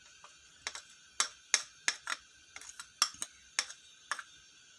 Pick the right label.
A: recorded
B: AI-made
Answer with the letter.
A